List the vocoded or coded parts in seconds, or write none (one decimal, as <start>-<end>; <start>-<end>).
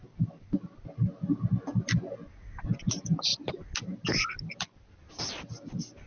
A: none